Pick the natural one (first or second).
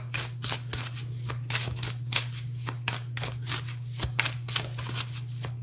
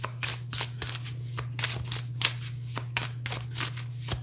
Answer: second